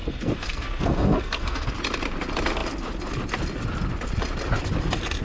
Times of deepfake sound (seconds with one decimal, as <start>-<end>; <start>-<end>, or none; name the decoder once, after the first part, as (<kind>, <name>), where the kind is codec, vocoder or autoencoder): 0.0-1.7 (codec, SNAC)